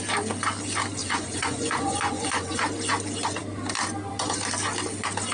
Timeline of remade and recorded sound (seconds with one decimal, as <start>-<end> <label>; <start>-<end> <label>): 0.0-1.0 recorded; 1.0-2.6 remade; 2.6-5.3 recorded